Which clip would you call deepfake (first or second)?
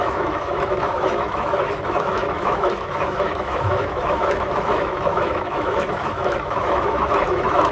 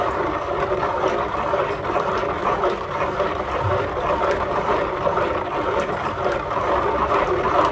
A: first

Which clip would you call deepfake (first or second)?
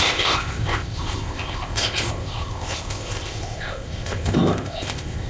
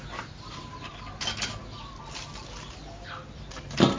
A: first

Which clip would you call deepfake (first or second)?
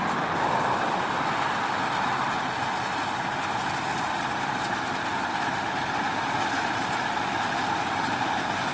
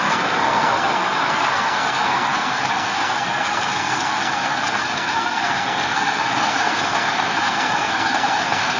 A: second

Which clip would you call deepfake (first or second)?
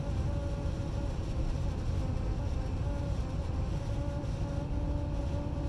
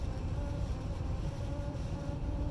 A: second